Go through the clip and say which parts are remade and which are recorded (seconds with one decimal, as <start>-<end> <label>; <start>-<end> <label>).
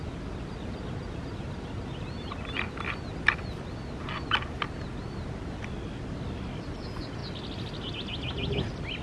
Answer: 0.0-9.0 recorded